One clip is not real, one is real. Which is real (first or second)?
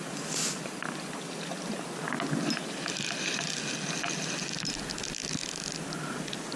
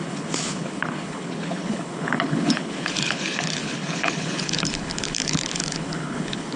first